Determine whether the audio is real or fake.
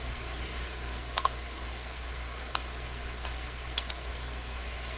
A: fake